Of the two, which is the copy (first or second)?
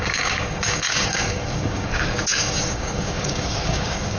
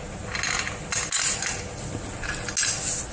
first